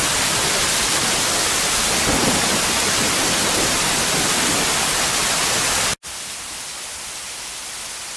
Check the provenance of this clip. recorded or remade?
recorded